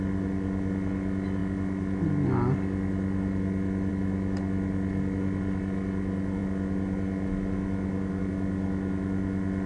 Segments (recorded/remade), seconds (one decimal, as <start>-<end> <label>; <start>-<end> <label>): 0.0-9.7 recorded